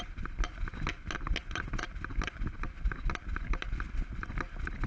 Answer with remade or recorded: recorded